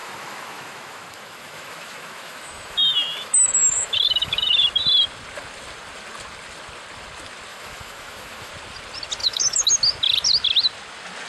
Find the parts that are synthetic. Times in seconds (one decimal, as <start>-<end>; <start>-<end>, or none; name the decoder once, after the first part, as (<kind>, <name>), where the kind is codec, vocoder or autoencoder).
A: 0.0-4.5 (autoencoder, DAC-VAE); 7.5-8.5; 9.2-9.7